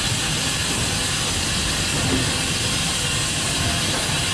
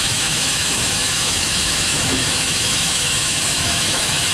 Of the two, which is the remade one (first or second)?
second